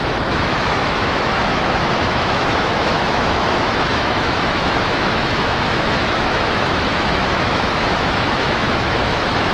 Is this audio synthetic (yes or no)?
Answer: yes